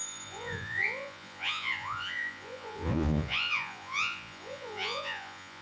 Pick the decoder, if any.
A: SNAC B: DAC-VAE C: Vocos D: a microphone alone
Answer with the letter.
C